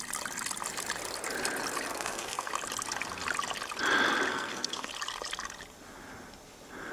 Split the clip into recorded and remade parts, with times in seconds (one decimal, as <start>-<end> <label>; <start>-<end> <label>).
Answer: 0.0-1.9 recorded; 1.9-2.5 remade; 2.5-4.3 recorded; 4.3-4.9 remade; 4.9-6.9 recorded